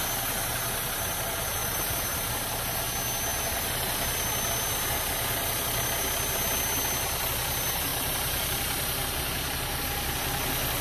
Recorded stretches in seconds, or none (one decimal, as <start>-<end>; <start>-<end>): 0.0-1.6; 2.3-7.9; 9.8-10.8